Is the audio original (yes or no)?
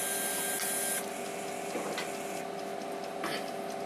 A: yes